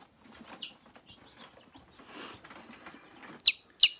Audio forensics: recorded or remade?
recorded